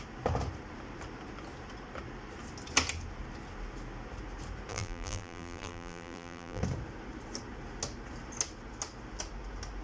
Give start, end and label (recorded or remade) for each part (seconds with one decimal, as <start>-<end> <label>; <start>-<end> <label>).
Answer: 0.0-4.7 recorded; 4.7-6.6 remade; 6.6-9.8 recorded